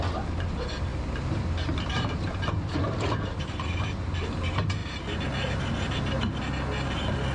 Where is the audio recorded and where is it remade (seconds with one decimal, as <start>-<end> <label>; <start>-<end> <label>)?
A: 0.0-0.9 recorded; 0.9-3.7 remade; 3.7-7.3 recorded